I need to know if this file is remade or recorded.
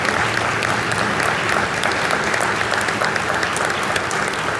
recorded